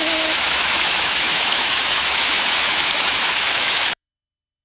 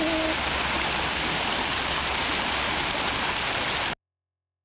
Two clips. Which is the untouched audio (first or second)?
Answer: second